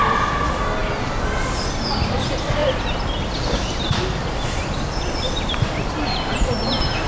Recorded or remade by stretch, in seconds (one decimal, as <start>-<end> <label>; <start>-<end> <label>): 0.0-7.1 recorded